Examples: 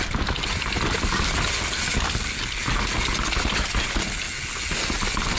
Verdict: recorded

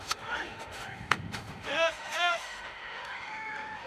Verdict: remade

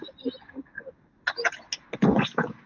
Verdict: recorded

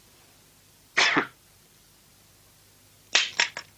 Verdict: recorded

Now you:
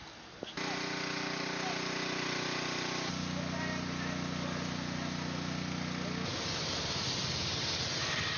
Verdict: recorded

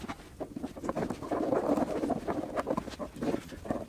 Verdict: recorded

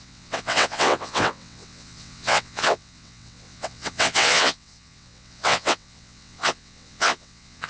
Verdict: remade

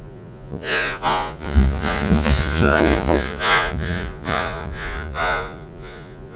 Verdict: remade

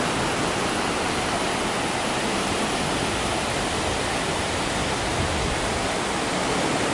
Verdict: recorded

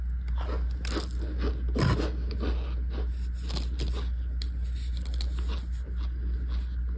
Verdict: recorded